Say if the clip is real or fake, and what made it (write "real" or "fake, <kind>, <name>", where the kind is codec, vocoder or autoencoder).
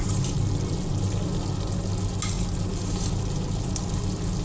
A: real